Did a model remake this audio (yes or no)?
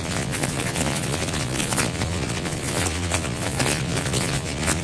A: yes